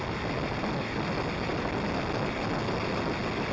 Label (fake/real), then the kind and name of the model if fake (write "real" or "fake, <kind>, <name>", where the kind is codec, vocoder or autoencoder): real